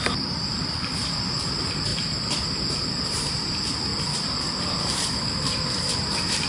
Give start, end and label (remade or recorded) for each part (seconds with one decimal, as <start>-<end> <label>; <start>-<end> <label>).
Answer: 0.0-3.9 remade; 3.9-4.6 recorded; 4.6-6.5 remade